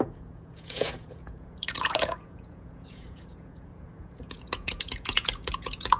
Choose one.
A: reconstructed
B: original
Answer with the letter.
A